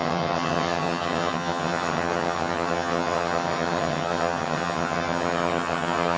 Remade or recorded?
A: remade